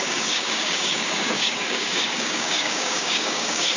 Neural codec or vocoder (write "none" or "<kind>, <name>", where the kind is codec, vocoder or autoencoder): codec, DAC